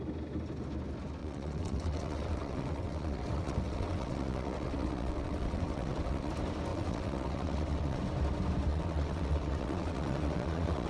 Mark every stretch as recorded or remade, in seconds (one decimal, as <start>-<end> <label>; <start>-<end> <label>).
0.0-1.2 recorded; 1.2-6.3 remade; 6.3-6.7 recorded; 6.7-8.0 remade; 8.0-8.7 recorded; 8.7-10.9 remade